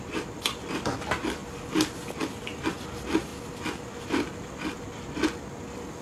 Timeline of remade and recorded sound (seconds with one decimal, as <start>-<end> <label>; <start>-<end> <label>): 0.0-6.0 recorded

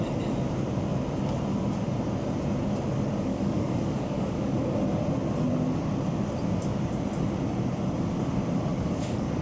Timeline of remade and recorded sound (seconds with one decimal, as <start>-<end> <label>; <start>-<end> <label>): 0.0-3.3 recorded; 3.3-4.8 remade; 4.8-8.7 recorded; 8.7-9.4 remade

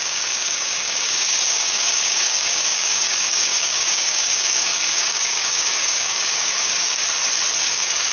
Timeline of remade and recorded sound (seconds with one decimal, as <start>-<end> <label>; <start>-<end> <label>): 0.0-7.0 remade; 7.0-7.6 recorded; 7.6-8.1 remade

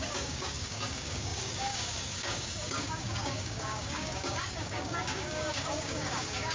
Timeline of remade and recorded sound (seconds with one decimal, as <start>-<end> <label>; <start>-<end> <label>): 0.0-6.5 remade

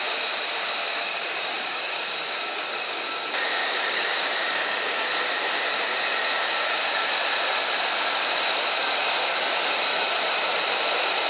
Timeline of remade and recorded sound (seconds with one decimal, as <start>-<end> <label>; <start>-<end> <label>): 0.0-0.8 recorded; 0.8-3.0 remade; 3.0-3.6 recorded; 3.6-5.1 remade; 5.1-11.3 recorded

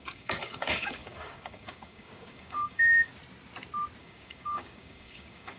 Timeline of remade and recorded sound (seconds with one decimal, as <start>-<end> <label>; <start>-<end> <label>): 0.0-3.1 remade; 3.1-4.0 recorded; 4.0-5.6 remade

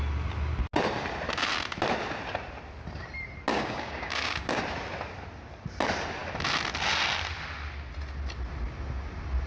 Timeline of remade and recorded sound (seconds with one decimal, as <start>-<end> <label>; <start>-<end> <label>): 0.0-3.5 recorded; 3.5-4.6 remade; 4.6-9.5 recorded

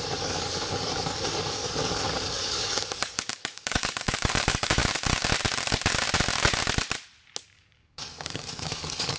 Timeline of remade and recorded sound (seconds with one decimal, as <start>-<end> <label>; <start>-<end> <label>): 0.0-4.8 remade; 4.8-7.4 recorded; 7.4-9.2 remade